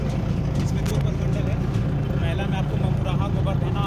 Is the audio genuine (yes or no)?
yes